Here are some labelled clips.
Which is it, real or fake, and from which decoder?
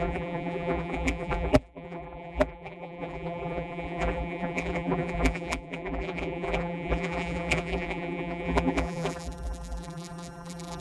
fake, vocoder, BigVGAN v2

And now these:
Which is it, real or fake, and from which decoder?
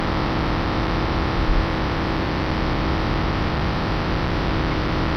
fake, vocoder, BigVGAN v2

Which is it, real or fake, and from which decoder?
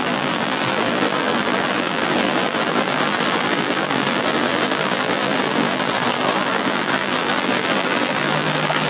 fake, vocoder, BigVGAN v2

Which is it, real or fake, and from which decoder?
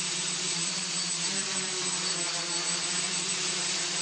fake, vocoder, BigVGAN v2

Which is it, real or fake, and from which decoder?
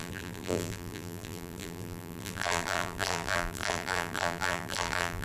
fake, vocoder, BigVGAN v2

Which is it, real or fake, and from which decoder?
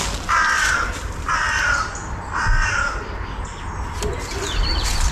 real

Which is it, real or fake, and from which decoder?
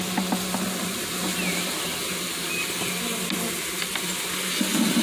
real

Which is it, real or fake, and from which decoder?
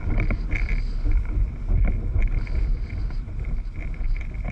fake, vocoder, BigVGAN v2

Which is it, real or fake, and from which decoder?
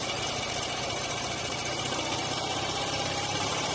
fake, vocoder, BigVGAN v2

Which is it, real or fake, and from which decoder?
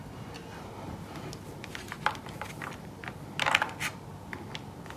real